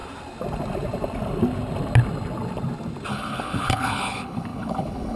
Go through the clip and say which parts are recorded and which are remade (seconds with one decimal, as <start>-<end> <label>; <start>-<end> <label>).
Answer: 0.0-3.1 recorded; 3.1-5.2 remade